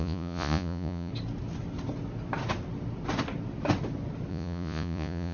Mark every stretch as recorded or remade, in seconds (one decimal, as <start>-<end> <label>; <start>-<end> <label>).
0.0-1.1 remade; 1.1-4.3 recorded; 4.3-5.3 remade